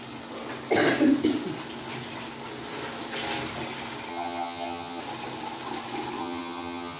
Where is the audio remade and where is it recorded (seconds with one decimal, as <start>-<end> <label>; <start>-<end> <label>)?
0.0-4.1 recorded; 4.1-5.0 remade; 5.0-6.2 recorded; 6.2-7.0 remade